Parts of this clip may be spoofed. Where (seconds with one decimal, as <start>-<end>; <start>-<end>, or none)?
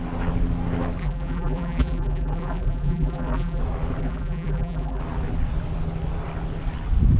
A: 1.0-3.6; 4.0-5.0